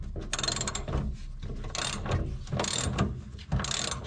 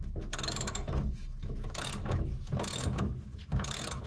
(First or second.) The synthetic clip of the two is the second